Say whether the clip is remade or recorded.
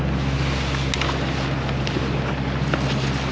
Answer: recorded